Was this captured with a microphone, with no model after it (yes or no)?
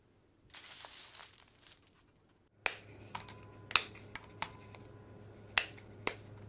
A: yes